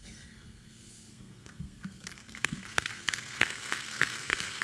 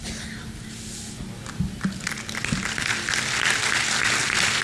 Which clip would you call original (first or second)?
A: second